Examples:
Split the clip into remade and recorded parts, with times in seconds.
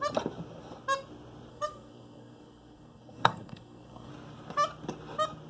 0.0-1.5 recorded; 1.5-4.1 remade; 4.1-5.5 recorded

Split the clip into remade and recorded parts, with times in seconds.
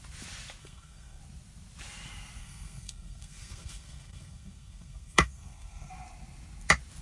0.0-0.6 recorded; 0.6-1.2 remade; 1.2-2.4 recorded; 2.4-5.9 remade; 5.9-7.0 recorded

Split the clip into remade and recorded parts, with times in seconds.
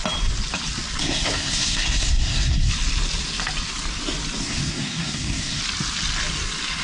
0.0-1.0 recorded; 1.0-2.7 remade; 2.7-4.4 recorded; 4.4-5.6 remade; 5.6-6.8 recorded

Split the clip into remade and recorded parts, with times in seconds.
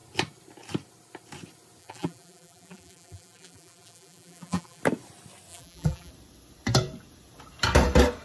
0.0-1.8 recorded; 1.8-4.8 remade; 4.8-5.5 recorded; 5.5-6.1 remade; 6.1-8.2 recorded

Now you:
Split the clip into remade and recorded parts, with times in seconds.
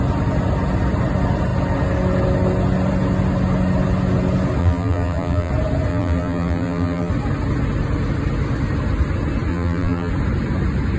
0.0-4.6 recorded; 4.6-5.5 remade; 5.5-5.9 recorded; 5.9-7.1 remade; 7.1-9.5 recorded; 9.5-10.1 remade; 10.1-11.0 recorded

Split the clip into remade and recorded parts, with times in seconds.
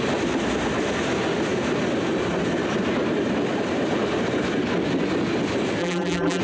0.0-5.8 recorded; 5.8-6.4 remade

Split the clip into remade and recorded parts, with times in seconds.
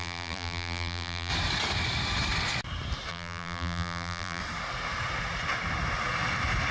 0.0-1.3 remade; 1.3-3.1 recorded; 3.1-4.4 remade; 4.4-6.7 recorded